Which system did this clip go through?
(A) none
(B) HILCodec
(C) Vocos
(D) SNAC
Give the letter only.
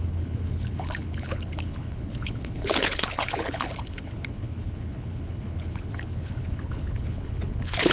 B